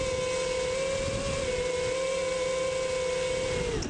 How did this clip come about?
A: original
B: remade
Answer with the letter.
A